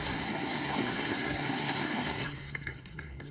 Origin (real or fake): fake